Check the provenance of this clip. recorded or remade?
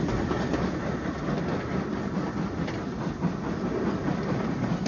recorded